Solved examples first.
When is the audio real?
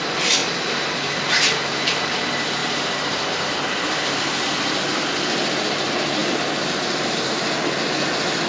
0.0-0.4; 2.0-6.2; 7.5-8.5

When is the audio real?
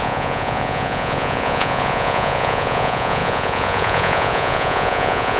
none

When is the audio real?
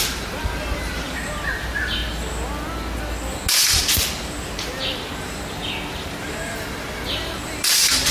2.0-3.8; 5.1-5.9